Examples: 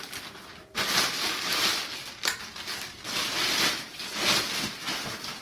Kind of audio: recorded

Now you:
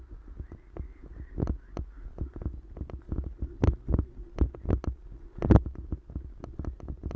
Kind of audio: recorded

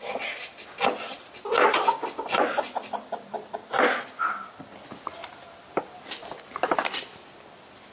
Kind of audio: recorded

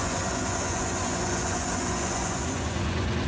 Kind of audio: remade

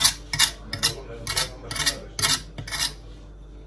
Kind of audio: recorded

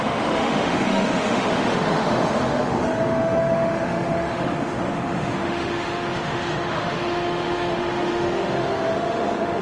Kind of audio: remade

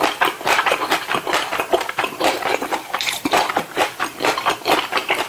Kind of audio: remade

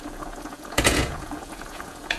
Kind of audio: remade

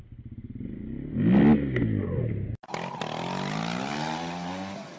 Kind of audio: recorded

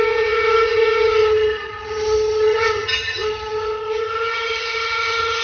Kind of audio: remade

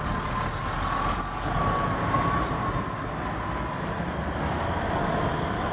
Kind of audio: recorded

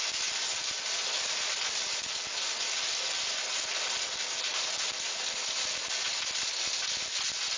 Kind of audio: recorded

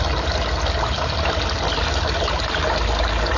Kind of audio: recorded